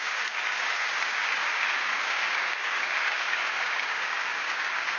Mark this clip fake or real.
fake